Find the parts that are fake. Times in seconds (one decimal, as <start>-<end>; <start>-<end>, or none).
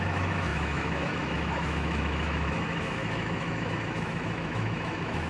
0.0-5.3